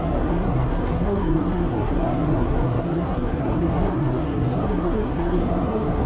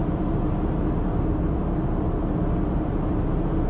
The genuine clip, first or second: second